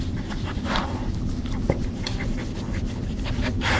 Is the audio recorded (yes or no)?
no